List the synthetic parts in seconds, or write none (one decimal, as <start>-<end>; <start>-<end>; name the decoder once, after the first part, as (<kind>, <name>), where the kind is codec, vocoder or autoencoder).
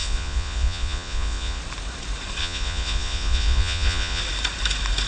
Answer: 0.0-1.6 (vocoder, Vocos); 2.4-4.2